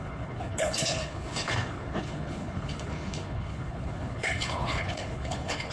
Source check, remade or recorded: remade